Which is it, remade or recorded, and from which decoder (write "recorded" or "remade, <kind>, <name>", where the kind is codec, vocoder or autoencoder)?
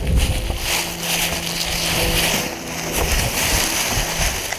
recorded